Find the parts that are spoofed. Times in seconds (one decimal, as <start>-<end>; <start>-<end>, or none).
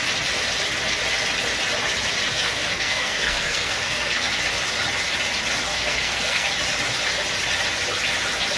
2.3-4.3; 5.7-6.5